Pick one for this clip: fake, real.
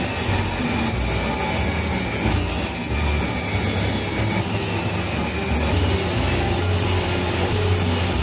real